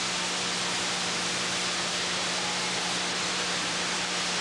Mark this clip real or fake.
real